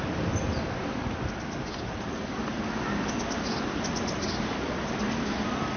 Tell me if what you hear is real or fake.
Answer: real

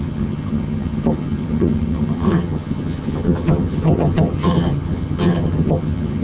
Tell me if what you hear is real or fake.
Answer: fake